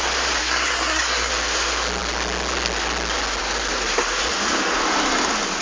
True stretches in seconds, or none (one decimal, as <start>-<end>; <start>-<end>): 0.0-0.4; 1.3-5.6